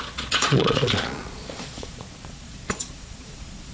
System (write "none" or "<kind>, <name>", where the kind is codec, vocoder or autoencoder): vocoder, Vocos